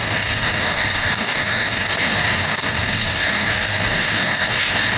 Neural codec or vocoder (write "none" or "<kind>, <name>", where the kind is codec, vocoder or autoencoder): codec, DAC